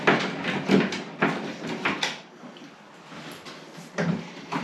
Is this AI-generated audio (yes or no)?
no